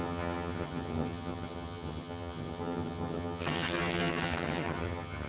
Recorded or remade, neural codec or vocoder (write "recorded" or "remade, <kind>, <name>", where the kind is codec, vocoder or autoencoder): remade, vocoder, HiFi-GAN